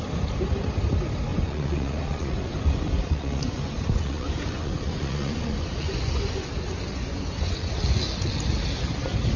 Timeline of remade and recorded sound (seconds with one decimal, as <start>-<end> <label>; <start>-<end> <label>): 0.0-1.3 recorded; 1.3-6.5 remade; 6.5-6.9 recorded; 6.9-7.7 remade; 7.7-9.4 recorded